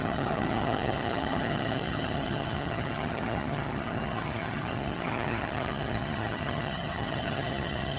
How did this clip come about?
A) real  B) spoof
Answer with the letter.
B